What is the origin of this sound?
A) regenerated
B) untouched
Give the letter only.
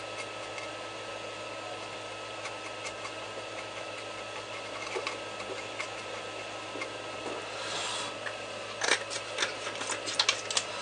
B